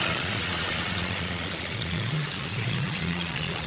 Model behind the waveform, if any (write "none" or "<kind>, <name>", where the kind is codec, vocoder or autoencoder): vocoder, Vocos